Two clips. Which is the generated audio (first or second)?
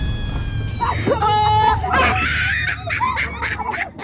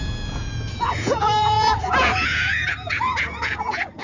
second